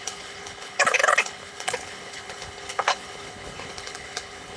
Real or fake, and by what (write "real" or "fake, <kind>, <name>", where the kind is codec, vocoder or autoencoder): fake, codec, HILCodec